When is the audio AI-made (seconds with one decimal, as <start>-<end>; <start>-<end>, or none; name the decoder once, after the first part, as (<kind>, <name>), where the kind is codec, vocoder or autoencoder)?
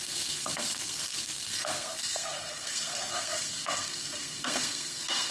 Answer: 0.0-5.3 (codec, SNAC)